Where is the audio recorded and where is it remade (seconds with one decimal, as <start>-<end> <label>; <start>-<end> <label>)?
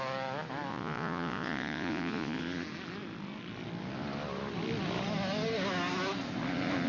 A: 0.0-0.7 recorded; 0.7-2.4 remade; 2.4-6.9 recorded